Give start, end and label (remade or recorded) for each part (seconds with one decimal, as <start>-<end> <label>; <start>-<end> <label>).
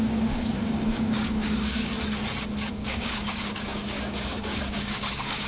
0.0-1.9 remade; 1.9-2.7 recorded; 2.7-5.5 remade